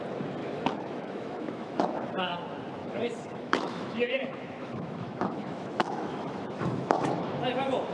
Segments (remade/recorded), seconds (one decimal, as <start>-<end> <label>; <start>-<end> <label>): 0.0-0.4 recorded; 0.4-2.1 remade; 2.1-2.8 recorded; 2.8-7.4 remade; 7.4-7.9 recorded